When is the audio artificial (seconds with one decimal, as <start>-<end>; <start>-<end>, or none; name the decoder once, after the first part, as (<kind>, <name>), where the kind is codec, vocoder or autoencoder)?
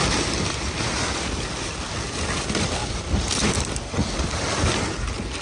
2.8-3.5 (vocoder, BigVGAN v2)